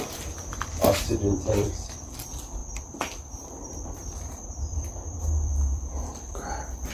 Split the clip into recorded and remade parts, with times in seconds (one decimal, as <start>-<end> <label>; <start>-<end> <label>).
0.0-6.9 remade